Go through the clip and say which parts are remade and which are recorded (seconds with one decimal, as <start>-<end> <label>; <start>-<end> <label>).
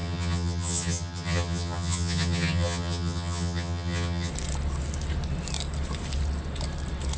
0.0-4.3 remade; 4.3-7.2 recorded